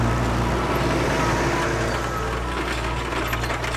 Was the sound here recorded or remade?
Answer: recorded